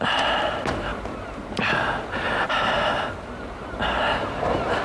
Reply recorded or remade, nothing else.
recorded